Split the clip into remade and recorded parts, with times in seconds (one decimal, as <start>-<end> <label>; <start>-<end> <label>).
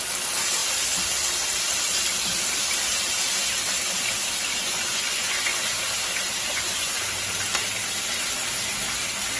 0.0-4.6 recorded; 4.6-5.8 remade; 5.8-6.5 recorded; 6.5-7.0 remade; 7.0-9.4 recorded